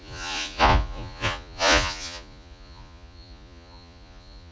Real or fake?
fake